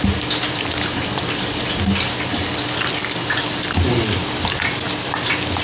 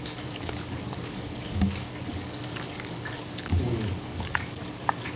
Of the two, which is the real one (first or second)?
first